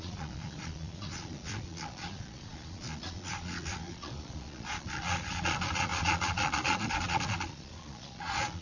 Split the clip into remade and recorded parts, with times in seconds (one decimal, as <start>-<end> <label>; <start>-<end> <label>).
0.0-8.6 remade